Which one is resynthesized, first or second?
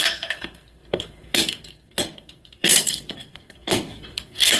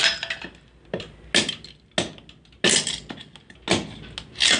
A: first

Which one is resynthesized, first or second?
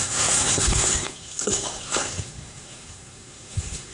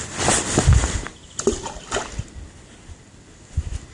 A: first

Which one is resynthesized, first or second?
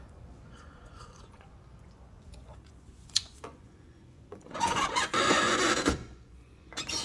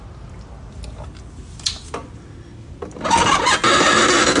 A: first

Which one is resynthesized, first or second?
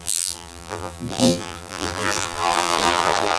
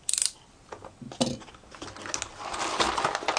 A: first